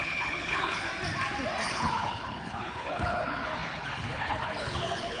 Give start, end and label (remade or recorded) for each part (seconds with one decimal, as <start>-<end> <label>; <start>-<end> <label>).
0.0-0.9 remade; 0.9-1.6 recorded; 1.6-5.2 remade